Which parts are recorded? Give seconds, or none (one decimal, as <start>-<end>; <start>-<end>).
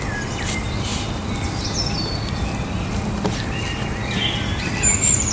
0.0-5.3